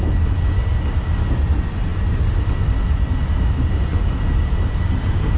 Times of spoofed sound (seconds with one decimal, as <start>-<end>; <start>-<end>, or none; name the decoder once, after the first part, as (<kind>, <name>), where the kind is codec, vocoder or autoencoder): none